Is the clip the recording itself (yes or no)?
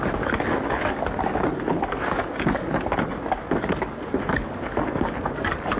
no